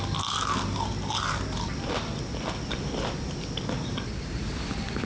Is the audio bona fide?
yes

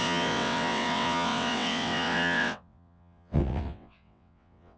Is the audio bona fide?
no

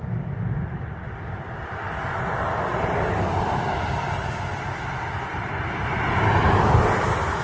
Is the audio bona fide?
yes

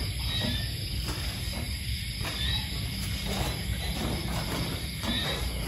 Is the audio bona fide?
yes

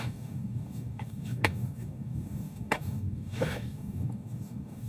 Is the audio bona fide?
no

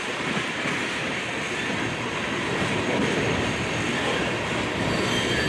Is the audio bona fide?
yes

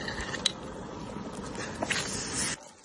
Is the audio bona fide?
yes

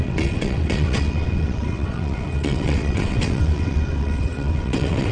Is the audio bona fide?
no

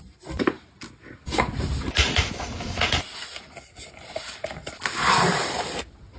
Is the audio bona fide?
yes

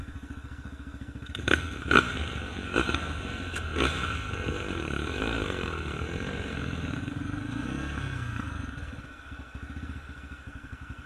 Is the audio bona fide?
no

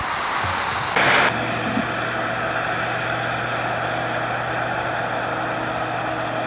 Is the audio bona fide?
yes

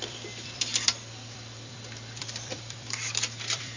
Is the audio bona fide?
no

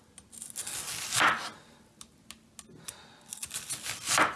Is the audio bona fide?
yes